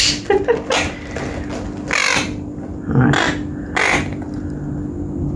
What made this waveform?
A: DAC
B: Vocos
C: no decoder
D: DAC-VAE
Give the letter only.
C